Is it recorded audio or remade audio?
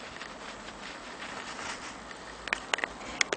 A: recorded